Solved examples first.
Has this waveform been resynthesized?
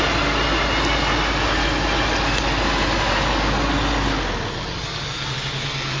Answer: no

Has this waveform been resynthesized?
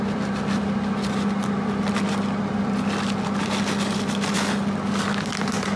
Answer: no